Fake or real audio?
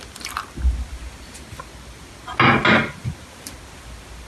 real